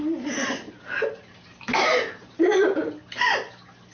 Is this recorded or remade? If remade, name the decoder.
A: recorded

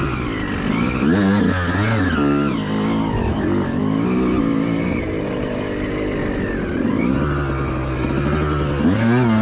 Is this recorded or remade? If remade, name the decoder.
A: recorded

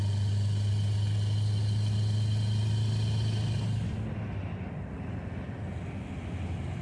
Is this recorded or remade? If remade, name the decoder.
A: recorded